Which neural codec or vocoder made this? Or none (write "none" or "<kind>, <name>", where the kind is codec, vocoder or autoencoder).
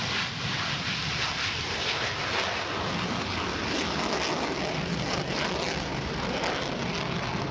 none